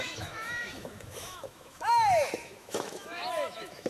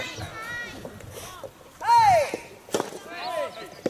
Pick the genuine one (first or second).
second